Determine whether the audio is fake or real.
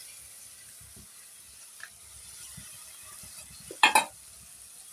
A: real